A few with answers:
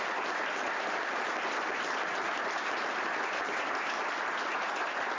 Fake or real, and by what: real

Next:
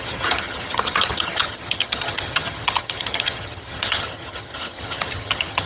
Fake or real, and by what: fake, vocoder, HiFi-GAN